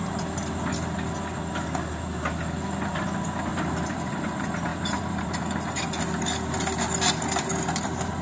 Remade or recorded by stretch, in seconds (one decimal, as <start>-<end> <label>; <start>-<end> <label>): 0.0-3.5 recorded; 3.5-4.1 remade; 4.1-4.7 recorded; 4.7-5.3 remade; 5.3-8.2 recorded